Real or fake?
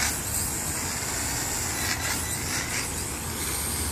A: real